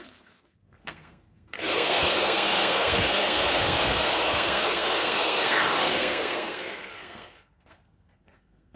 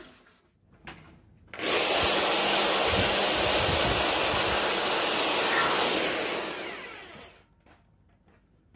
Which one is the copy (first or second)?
first